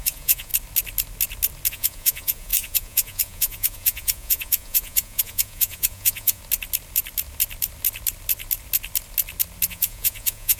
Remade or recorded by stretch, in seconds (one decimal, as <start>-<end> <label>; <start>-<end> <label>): 0.0-0.5 remade; 0.5-1.7 recorded; 1.7-6.4 remade; 6.4-9.7 recorded; 9.7-10.6 remade